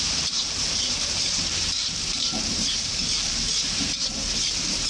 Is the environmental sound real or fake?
fake